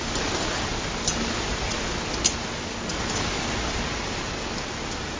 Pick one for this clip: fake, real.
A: real